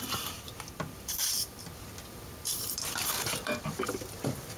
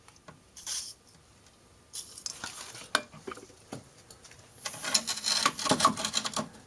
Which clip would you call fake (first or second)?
first